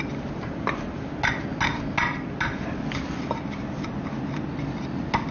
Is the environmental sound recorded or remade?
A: recorded